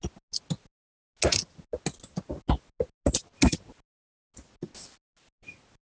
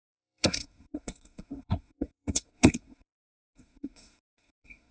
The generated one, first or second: second